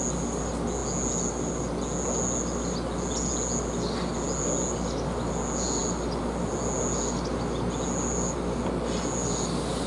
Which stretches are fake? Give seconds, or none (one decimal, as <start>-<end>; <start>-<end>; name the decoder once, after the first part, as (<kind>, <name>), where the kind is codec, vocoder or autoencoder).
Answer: none